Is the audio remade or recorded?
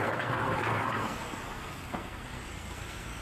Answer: remade